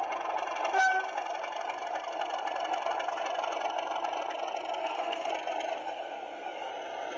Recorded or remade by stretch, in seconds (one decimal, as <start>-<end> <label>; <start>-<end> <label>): 0.0-4.8 recorded; 4.8-5.3 remade; 5.3-5.8 recorded; 5.8-6.7 remade; 6.7-7.2 recorded